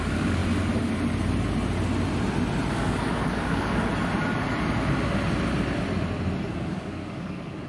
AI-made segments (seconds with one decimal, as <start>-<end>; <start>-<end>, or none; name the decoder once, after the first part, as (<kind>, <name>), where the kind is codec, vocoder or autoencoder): 0.0-0.4 (codec, DAC); 2.7-3.9; 6.5-7.7